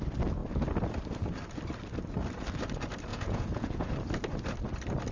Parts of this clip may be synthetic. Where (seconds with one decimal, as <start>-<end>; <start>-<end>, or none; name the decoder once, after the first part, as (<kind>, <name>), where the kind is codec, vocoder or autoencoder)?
3.1-3.9 (vocoder, Vocos)